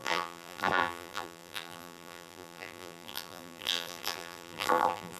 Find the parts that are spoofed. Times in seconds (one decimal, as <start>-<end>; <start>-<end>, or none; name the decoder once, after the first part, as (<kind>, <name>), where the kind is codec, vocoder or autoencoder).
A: 0.0-5.2 (vocoder, BigVGAN v2)